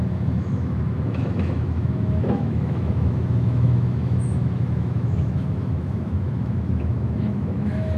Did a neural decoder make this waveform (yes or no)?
yes